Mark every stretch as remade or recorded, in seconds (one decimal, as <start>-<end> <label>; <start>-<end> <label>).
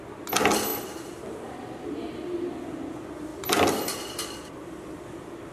0.0-0.7 recorded; 0.7-1.6 remade; 1.6-3.3 recorded; 3.3-5.1 remade; 5.1-5.5 recorded